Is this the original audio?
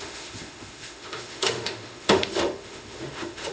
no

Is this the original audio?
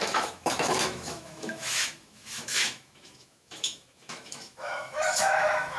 no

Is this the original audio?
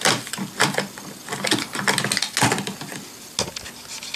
yes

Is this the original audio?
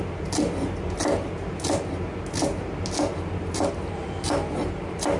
yes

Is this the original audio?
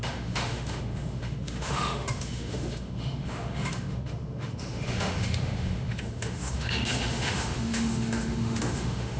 no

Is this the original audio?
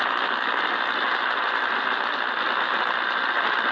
yes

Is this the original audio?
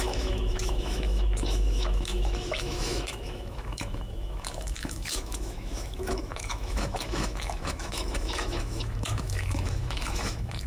no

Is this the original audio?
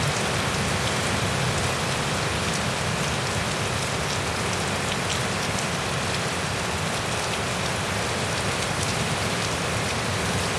yes